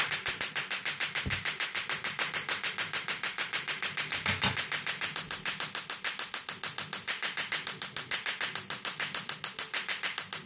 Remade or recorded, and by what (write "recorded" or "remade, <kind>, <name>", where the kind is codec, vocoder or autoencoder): recorded